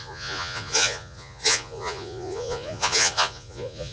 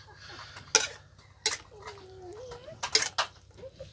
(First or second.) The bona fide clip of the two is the second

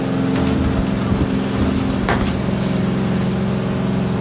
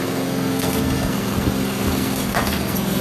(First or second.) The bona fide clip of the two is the first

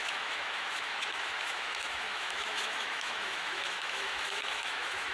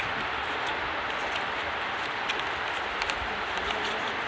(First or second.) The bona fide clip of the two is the second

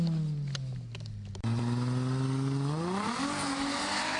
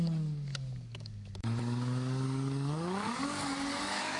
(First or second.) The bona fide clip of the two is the first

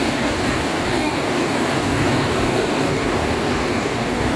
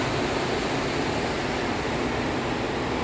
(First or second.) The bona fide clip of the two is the second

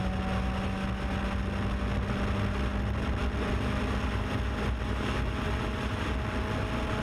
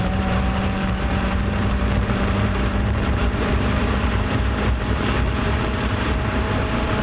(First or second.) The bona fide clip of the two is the first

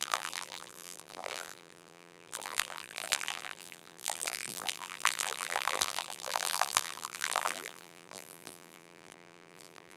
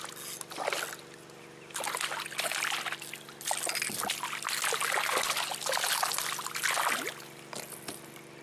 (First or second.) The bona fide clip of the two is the second